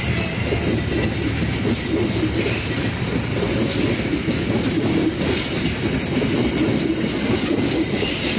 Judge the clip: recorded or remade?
recorded